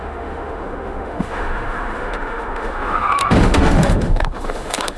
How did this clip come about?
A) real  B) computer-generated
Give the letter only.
B